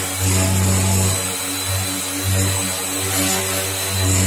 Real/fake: real